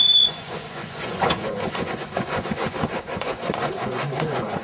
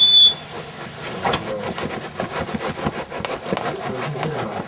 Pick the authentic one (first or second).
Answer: second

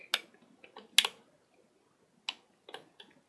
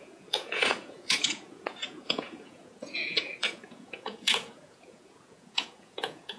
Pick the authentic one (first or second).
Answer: first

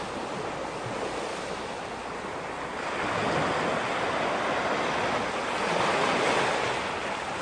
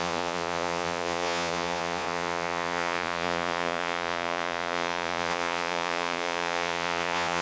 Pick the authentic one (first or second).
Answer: first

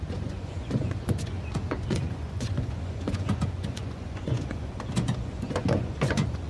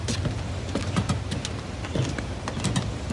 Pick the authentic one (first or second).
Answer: second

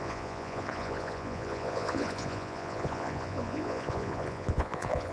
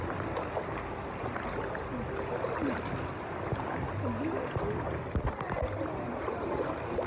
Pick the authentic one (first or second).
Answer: second